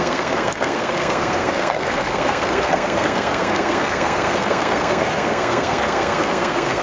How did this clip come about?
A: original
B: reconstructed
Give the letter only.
B